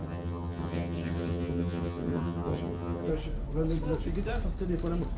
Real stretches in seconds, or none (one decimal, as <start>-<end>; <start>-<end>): 3.1-5.2